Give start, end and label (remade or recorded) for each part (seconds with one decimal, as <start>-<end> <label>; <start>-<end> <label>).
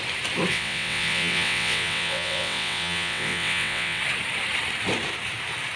0.0-0.5 recorded; 0.5-4.0 remade; 4.0-5.8 recorded